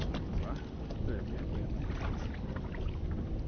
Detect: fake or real real